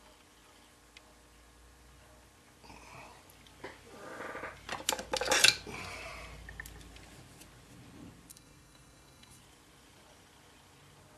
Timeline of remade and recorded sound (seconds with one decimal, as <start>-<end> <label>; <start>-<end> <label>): 0.0-8.3 recorded; 8.3-9.4 remade; 9.4-11.2 recorded